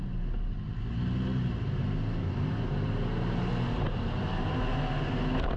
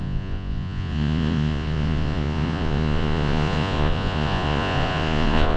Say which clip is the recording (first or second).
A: first